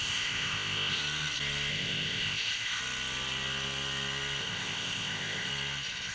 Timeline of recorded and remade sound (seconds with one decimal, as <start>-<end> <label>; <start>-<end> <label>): 0.0-1.0 remade; 1.0-1.7 recorded; 1.7-2.8 remade; 2.8-4.4 recorded; 4.4-5.5 remade; 5.5-6.1 recorded